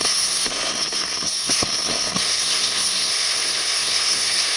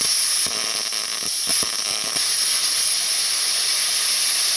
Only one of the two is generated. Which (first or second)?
first